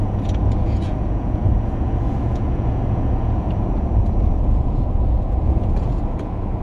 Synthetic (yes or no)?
yes